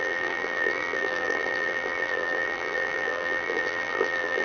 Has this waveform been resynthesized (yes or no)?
yes